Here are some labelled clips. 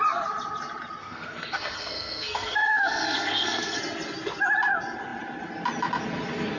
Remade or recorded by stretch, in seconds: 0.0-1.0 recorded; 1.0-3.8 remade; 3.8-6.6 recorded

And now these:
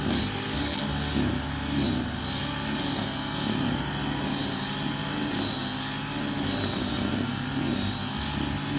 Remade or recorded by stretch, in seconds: 0.0-8.8 recorded

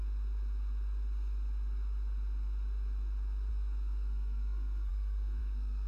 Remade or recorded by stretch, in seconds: 0.0-3.5 recorded; 3.5-5.9 remade

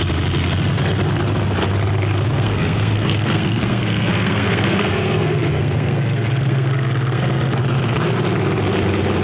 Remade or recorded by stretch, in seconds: 0.0-2.3 recorded; 2.3-7.6 remade; 7.6-9.2 recorded

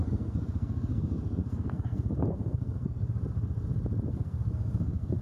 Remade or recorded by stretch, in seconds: 0.0-3.1 remade; 3.1-4.1 recorded; 4.1-5.2 remade